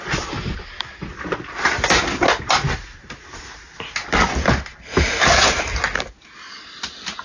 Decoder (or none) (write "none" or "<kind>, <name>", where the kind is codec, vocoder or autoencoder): none